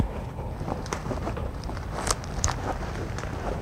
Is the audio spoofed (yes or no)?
yes